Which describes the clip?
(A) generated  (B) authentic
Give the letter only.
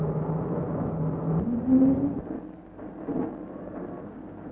B